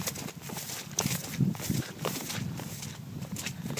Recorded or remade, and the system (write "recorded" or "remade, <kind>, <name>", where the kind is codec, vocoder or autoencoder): recorded